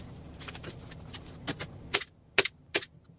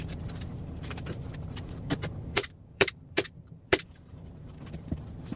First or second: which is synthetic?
second